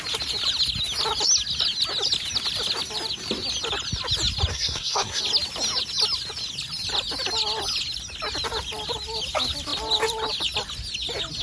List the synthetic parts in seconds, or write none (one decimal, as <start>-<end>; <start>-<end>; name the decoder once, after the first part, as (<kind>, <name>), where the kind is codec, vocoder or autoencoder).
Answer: 4.5-5.2 (codec, SNAC)